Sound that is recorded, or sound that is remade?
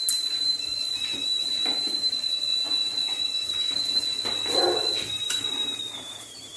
recorded